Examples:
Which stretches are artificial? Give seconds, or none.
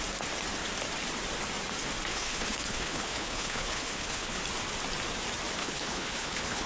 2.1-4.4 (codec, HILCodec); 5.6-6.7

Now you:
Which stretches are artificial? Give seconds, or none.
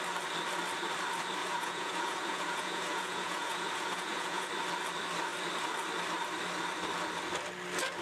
1.4-4.5 (vocoder, Vocos)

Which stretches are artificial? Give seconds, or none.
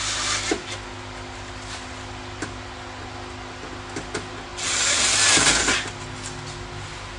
none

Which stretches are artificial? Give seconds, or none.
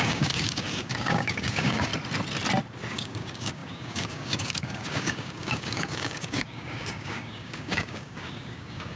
0.0-1.9 (codec, DAC); 2.9-9.0